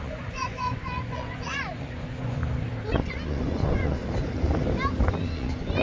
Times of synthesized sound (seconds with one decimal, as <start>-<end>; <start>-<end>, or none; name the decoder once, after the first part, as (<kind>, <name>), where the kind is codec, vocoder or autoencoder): 0.0-2.4 (vocoder, Vocos); 2.9-4.0; 5.2-5.8